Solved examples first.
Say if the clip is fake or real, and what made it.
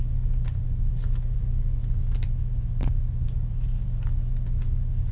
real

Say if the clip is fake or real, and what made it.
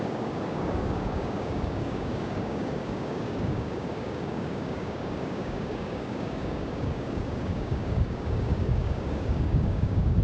fake, codec, DAC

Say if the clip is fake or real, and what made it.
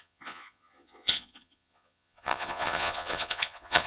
fake, vocoder, Vocos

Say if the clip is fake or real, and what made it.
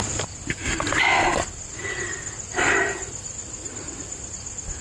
real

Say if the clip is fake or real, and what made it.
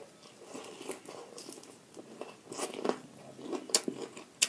real